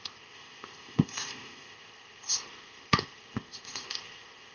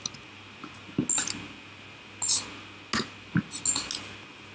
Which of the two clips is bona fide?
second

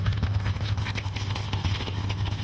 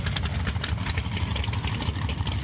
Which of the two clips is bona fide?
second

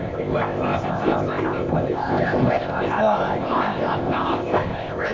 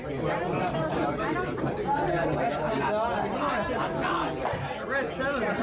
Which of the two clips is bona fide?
second